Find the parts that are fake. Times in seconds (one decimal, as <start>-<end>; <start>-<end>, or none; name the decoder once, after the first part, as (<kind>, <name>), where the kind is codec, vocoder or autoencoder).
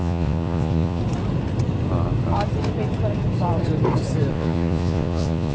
0.0-1.0 (vocoder, Vocos); 4.3-5.5